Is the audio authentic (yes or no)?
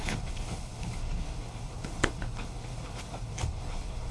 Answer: no